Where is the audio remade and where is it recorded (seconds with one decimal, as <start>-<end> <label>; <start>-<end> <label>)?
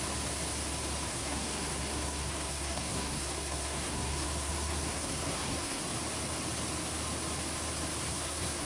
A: 0.0-1.1 recorded; 1.1-5.8 remade; 5.8-8.1 recorded; 8.1-8.7 remade